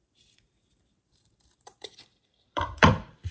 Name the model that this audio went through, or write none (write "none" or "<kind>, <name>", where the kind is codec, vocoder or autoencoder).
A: vocoder, BigVGAN v2